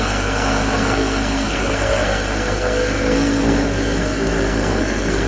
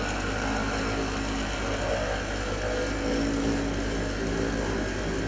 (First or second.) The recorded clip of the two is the second